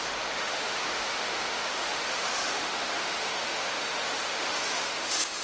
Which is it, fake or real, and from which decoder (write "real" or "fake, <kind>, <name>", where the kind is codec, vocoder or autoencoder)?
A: fake, autoencoder, DAC-VAE